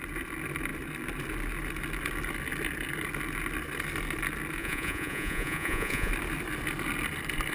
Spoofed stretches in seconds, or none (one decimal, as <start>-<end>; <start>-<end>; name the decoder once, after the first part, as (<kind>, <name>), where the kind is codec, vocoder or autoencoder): 4.6-6.1 (vocoder, Vocos)